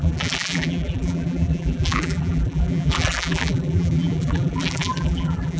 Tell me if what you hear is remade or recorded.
remade